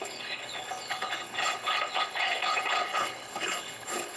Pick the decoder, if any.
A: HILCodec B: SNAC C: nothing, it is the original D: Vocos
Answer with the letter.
A